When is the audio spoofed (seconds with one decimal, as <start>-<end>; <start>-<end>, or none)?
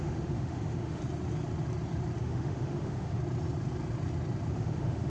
0.0-1.0; 2.2-3.2; 4.5-5.1